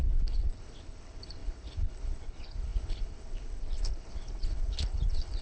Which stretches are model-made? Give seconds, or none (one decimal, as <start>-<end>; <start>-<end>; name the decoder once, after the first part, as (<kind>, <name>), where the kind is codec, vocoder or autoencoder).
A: 0.0-5.4 (codec, HILCodec)

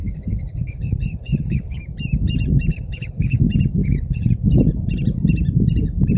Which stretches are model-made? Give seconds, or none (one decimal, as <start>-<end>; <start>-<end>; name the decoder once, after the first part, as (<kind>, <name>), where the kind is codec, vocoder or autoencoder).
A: 0.0-1.8 (codec, HILCodec); 2.7-3.4; 3.8-4.3

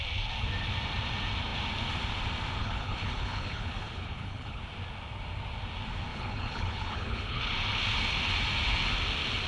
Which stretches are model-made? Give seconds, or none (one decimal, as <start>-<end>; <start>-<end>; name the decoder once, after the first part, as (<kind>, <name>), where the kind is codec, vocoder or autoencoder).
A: 2.6-4.6 (codec, HILCodec); 6.1-7.4